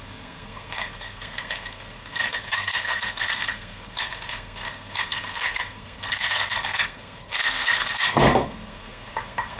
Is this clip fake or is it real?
fake